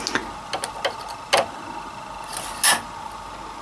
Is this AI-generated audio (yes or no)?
no